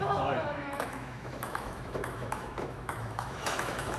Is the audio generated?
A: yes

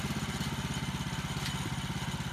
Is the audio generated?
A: no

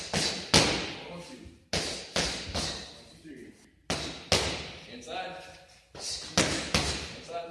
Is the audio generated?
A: no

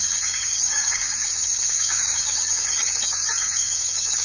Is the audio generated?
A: yes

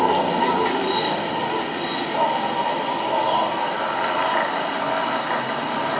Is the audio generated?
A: no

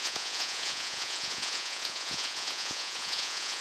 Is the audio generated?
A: yes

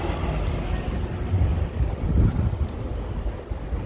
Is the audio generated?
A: no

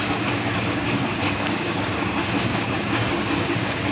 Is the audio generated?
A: yes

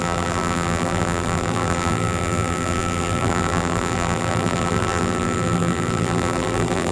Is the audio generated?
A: yes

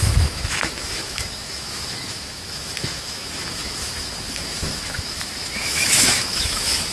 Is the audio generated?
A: yes